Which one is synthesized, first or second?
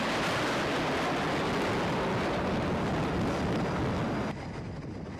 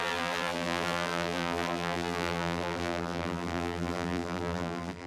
second